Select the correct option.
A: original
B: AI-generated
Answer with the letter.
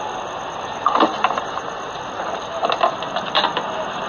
A